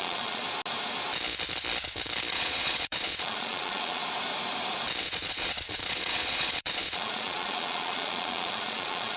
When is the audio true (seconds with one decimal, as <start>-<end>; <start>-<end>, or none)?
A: 0.4-2.3; 4.0-5.0